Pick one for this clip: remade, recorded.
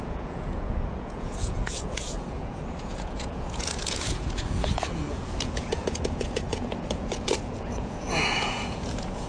remade